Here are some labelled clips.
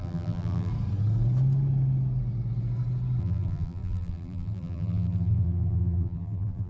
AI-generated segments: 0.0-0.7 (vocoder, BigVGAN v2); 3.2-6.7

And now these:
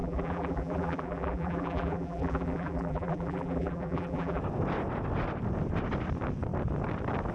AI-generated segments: 0.0-4.4 (vocoder, BigVGAN v2)

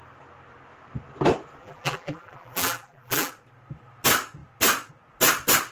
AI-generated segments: 1.6-3.3 (vocoder, BigVGAN v2)